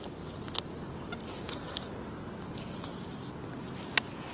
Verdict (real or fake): real